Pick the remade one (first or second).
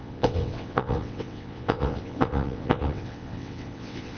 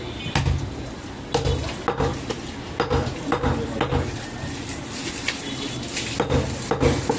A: first